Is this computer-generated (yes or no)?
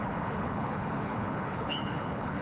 yes